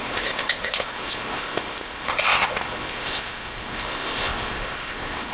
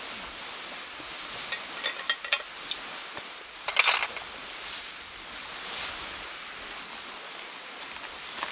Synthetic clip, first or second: first